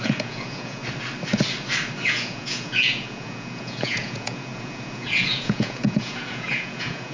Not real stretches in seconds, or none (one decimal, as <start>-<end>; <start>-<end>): 0.0-0.8; 2.1-7.1